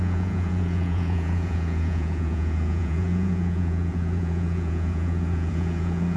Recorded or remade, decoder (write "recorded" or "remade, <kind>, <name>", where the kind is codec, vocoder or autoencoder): remade, vocoder, Vocos